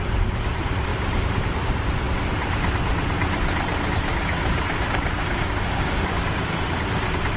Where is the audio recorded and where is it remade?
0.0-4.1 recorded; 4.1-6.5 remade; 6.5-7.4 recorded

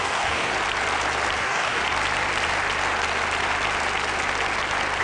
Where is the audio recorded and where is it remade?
0.0-0.5 remade; 0.5-1.4 recorded; 1.4-1.8 remade; 1.8-5.0 recorded

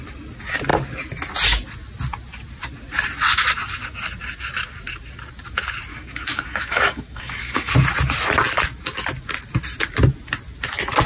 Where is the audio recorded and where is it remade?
0.0-5.9 recorded; 5.9-7.7 remade; 7.7-11.1 recorded

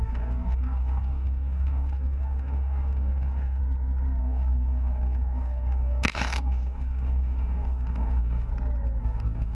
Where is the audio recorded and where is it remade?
0.0-3.6 remade; 3.6-4.2 recorded; 4.2-8.5 remade; 8.5-9.0 recorded; 9.0-9.5 remade

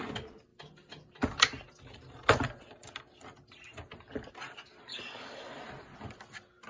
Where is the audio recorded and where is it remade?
0.0-4.9 recorded; 4.9-5.6 remade; 5.6-6.7 recorded

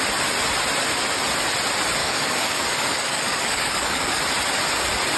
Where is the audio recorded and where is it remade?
0.0-2.0 recorded; 2.0-4.2 remade; 4.2-5.2 recorded

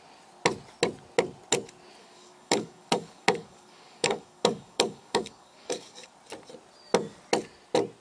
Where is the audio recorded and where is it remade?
0.0-2.0 recorded; 2.0-6.1 remade; 6.1-8.0 recorded

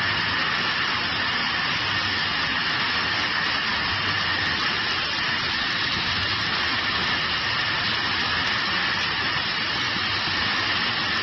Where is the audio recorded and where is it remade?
0.0-11.2 recorded